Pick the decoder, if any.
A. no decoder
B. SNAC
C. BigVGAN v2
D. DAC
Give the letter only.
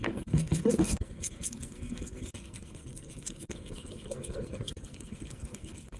B